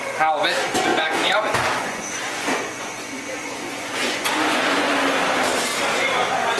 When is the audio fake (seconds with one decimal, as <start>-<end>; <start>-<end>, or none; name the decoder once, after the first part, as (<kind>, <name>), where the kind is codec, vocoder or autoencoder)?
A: 0.9-4.9 (vocoder, Vocos)